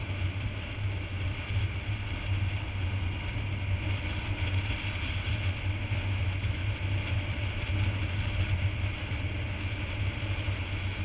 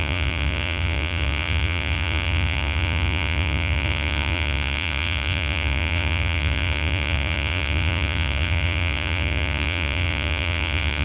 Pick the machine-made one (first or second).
second